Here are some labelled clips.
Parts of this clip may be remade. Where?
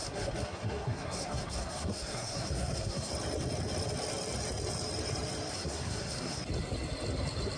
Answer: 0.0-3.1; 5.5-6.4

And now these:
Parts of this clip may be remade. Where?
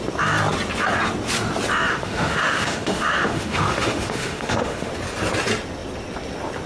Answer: 1.9-4.9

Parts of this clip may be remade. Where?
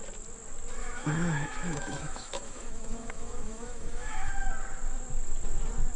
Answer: 0.8-4.3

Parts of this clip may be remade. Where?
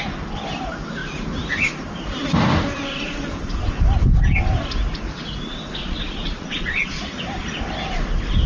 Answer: 5.8-7.0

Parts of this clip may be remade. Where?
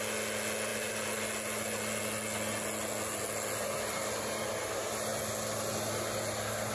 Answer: none